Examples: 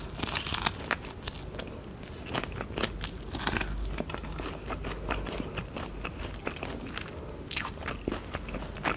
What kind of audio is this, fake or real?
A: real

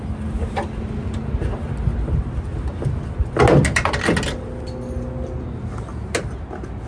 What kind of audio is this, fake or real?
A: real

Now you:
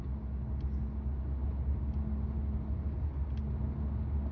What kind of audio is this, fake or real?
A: real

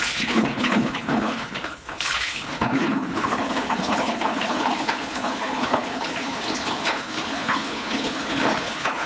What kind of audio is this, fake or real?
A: fake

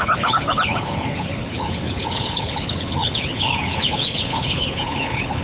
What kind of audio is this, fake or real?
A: fake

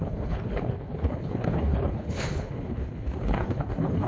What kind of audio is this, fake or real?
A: fake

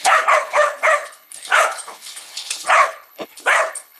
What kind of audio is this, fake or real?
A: fake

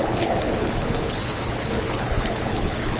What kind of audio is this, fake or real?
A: fake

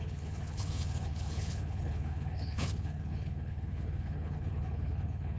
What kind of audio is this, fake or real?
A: fake